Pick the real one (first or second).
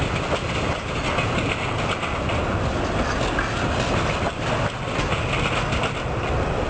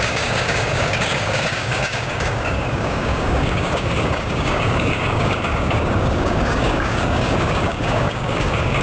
first